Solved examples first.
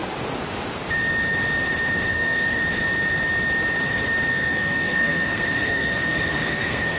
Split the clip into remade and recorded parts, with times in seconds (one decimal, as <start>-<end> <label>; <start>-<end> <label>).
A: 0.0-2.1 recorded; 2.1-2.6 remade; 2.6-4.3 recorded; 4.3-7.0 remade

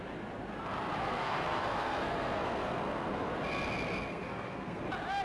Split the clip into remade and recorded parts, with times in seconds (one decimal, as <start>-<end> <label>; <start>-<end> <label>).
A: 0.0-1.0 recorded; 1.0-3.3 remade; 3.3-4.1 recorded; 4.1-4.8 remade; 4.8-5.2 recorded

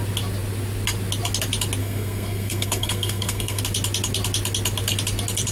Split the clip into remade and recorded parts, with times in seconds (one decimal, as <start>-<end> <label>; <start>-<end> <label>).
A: 0.0-1.8 recorded; 1.8-3.6 remade; 3.6-5.5 recorded